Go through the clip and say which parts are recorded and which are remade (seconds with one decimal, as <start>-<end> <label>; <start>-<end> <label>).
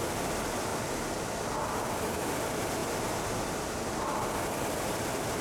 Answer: 0.0-5.4 recorded